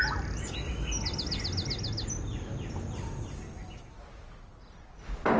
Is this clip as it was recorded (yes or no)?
yes